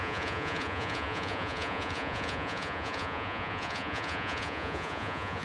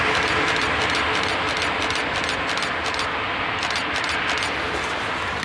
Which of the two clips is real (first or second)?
second